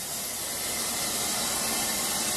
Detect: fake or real real